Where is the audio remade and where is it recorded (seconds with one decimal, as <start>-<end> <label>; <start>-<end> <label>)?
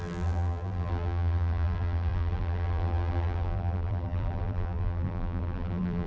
0.0-6.1 remade